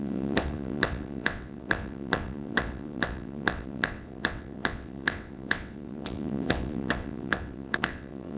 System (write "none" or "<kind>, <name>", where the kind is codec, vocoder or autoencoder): vocoder, WaveNeXt